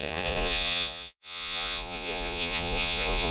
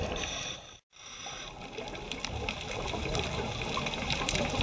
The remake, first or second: first